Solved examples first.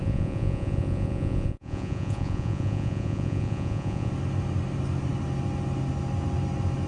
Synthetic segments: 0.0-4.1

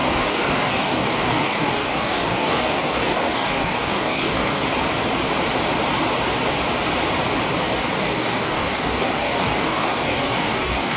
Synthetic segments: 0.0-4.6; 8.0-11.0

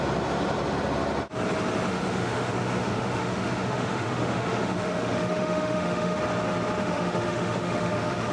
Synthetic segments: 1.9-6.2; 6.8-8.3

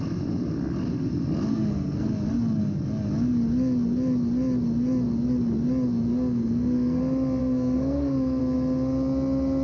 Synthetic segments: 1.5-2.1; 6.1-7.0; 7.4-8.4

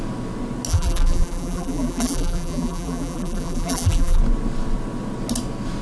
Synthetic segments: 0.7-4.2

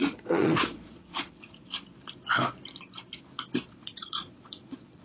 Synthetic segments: 0.0-1.6; 3.7-5.0

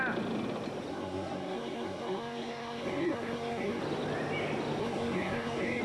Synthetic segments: 0.9-3.8; 4.8-5.8